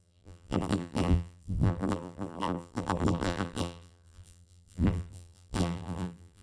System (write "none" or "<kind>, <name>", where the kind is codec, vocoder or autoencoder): vocoder, BigVGAN v2